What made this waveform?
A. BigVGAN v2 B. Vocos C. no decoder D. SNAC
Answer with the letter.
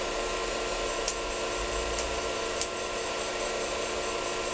A